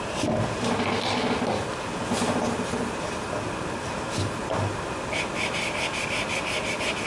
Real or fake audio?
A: real